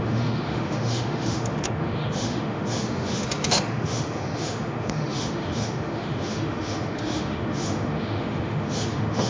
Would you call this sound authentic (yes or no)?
no